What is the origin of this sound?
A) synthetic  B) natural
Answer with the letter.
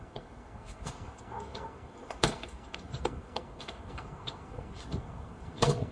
A